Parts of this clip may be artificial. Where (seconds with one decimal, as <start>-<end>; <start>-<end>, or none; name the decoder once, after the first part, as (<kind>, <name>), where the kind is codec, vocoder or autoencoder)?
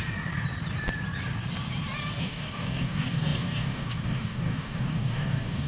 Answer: 2.2-5.7 (codec, DAC)